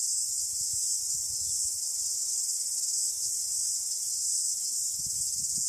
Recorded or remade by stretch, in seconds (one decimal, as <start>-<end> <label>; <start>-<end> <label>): 0.0-1.9 recorded; 1.9-5.0 remade; 5.0-5.7 recorded